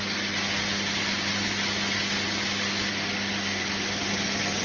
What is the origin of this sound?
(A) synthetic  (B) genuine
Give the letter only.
B